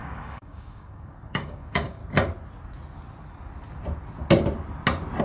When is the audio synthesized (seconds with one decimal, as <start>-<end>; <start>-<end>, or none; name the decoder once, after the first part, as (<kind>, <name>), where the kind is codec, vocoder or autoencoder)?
0.0-2.0 (codec, DAC)